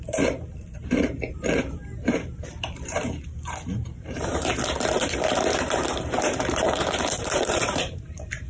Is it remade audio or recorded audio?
remade